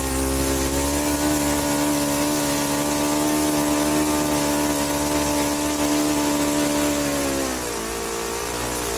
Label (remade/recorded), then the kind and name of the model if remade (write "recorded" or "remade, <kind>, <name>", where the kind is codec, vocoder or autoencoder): recorded